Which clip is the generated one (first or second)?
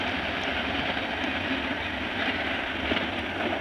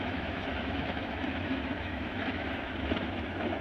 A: second